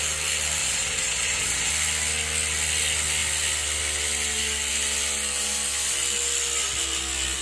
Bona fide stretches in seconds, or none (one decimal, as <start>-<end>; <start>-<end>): 0.0-0.6; 1.7-7.4